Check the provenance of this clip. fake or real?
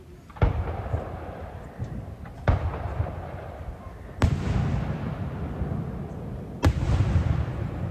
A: real